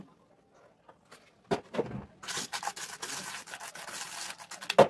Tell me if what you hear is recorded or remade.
recorded